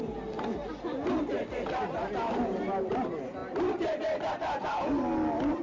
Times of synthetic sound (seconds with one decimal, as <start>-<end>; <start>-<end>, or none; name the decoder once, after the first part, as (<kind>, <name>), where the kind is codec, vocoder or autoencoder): none